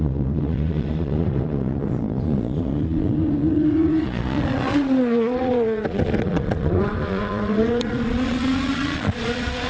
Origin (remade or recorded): remade